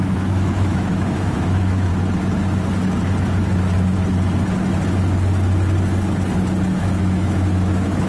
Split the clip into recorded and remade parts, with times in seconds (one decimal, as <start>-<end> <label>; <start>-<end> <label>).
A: 0.0-1.9 remade; 1.9-6.8 recorded; 6.8-8.1 remade